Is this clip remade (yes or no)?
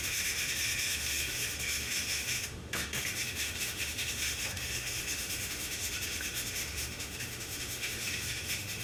yes